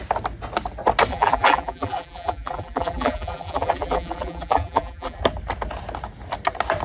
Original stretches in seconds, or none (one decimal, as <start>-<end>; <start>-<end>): 0.0-1.1; 5.2-6.8